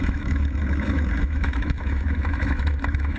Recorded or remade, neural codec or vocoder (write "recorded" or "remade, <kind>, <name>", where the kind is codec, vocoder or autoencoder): remade, autoencoder, DAC-VAE